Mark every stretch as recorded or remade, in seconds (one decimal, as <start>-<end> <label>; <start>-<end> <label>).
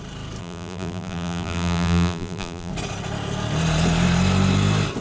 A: 0.0-0.4 recorded; 0.4-2.7 remade; 2.7-5.0 recorded